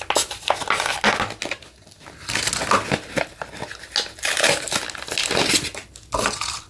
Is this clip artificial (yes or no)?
no